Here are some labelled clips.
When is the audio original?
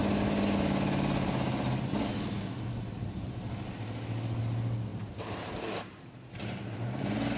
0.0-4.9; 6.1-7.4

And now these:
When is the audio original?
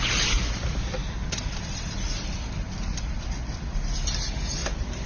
0.0-1.0; 3.3-4.6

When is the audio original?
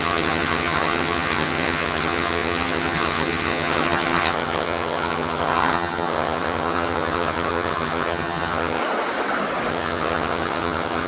8.8-9.7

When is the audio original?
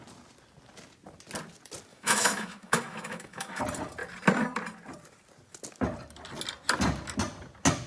0.0-1.9; 3.6-7.9